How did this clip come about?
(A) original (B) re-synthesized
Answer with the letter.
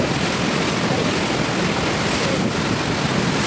A